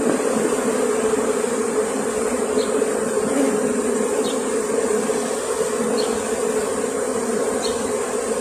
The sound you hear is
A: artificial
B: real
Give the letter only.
B